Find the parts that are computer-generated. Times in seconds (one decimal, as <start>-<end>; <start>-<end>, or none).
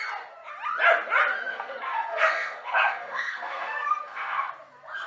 1.5-4.5